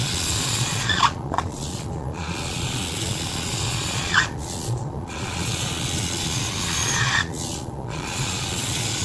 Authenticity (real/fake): fake